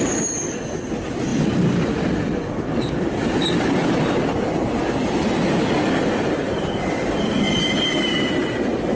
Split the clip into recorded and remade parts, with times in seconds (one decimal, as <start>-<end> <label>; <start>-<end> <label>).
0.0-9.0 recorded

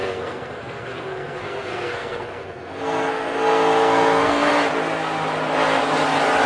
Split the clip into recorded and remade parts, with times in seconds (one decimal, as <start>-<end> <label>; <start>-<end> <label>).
0.0-4.5 remade; 4.5-6.5 recorded

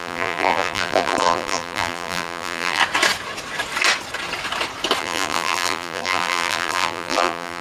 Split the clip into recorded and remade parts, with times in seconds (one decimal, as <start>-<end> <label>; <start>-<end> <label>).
0.0-2.8 remade; 2.8-5.0 recorded; 5.0-7.6 remade